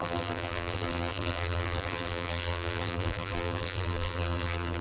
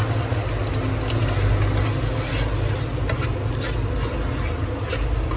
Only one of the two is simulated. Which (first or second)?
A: first